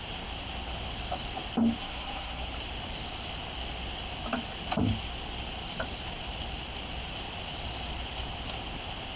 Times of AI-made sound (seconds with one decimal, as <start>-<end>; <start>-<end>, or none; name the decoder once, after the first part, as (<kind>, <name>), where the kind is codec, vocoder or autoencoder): 1.8-2.4 (codec, SNAC)

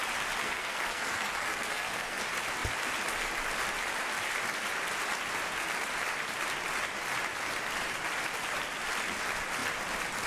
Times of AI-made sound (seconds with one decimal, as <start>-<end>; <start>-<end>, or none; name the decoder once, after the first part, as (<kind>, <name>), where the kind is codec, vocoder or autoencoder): 0.4-2.2 (codec, SNAC)

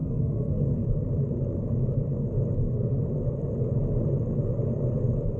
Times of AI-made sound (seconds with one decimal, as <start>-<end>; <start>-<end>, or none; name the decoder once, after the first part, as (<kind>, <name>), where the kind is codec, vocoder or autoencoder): 0.0-0.6 (codec, SNAC)

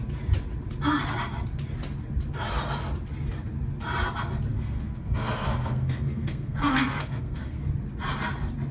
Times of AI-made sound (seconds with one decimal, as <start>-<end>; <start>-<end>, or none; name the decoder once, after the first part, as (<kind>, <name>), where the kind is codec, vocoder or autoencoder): 4.5-7.6 (codec, SNAC)

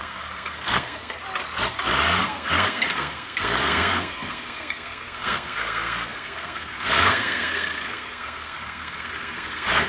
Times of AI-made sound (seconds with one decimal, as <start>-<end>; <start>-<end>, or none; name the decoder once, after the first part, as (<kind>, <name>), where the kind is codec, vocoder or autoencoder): 0.0-1.1 (codec, SNAC); 2.2-9.9

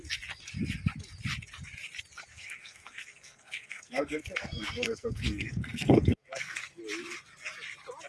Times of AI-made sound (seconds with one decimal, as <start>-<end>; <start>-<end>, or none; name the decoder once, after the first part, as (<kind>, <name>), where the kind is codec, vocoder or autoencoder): 2.3-6.8 (codec, SNAC)

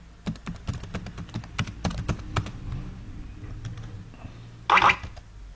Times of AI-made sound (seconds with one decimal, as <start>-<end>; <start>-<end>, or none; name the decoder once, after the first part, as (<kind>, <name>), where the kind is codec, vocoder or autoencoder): none

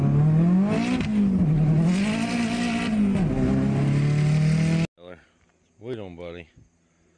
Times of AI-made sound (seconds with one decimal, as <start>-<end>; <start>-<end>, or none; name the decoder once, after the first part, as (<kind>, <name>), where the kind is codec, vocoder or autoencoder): none